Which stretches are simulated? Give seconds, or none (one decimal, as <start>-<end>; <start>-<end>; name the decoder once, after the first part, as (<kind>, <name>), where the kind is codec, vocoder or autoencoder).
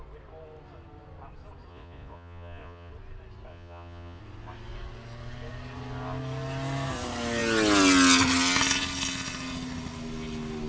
1.7-2.9 (vocoder, Vocos); 3.5-4.2